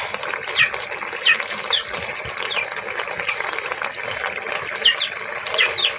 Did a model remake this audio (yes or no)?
no